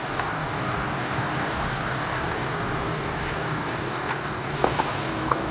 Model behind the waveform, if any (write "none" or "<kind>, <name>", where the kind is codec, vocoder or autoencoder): codec, DAC